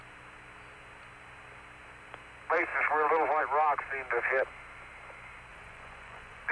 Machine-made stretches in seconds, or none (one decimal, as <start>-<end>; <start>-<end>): 5.5-6.5